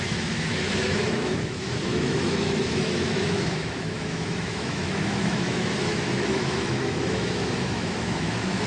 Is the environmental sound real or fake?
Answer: fake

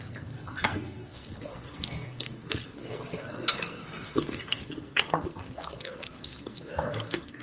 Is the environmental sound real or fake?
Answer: fake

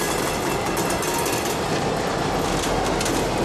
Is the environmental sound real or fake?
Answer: real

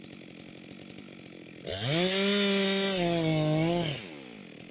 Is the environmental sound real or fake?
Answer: real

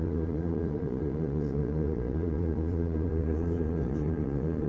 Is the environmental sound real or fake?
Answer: fake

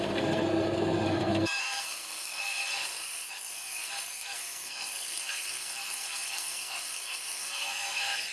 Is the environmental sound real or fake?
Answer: fake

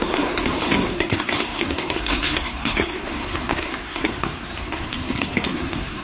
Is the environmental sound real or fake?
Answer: fake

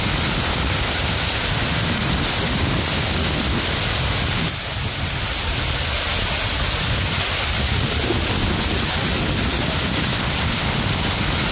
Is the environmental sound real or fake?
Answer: real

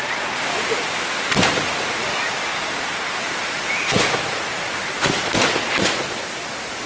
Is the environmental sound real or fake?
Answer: real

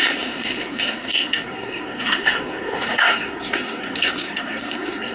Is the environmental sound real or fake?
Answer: fake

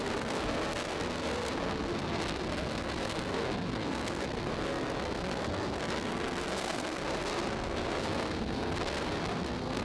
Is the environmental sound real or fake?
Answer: fake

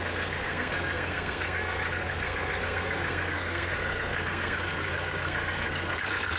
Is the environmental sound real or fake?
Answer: fake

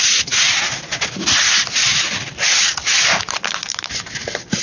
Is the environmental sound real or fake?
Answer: real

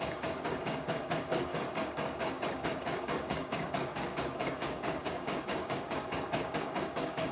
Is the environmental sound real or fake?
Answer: fake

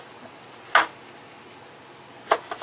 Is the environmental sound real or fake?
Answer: real